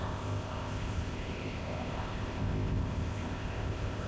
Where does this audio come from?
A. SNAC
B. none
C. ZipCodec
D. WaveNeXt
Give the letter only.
C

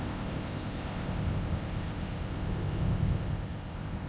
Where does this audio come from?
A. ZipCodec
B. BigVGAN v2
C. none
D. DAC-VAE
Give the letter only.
A